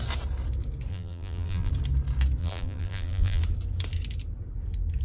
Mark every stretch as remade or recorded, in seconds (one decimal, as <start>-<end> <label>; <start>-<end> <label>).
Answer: 0.0-0.9 recorded; 0.9-1.7 remade; 1.7-2.4 recorded; 2.4-3.4 remade; 3.4-5.0 recorded